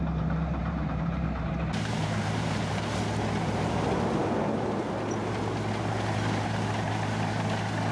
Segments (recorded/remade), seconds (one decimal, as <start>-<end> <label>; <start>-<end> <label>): 0.0-0.6 recorded; 0.6-3.0 remade; 3.0-7.9 recorded

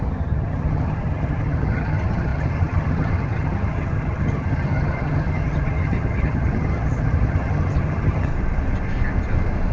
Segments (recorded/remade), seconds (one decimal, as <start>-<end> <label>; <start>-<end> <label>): 0.0-8.3 remade; 8.3-9.7 recorded

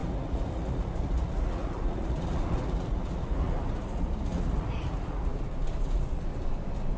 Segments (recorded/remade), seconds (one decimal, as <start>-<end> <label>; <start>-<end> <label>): 0.0-5.3 remade; 5.3-5.8 recorded; 5.8-6.3 remade; 6.3-7.0 recorded

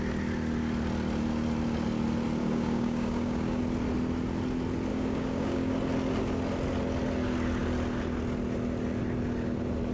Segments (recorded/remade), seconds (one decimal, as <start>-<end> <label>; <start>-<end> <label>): 0.0-2.4 recorded; 2.4-3.6 remade; 3.6-4.9 recorded; 4.9-5.7 remade; 5.7-9.9 recorded

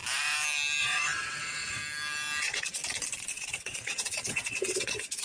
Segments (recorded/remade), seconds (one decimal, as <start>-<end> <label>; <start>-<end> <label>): 0.0-0.8 recorded; 0.8-1.8 remade; 1.8-2.4 recorded; 2.4-2.8 remade; 2.8-3.3 recorded; 3.3-5.2 remade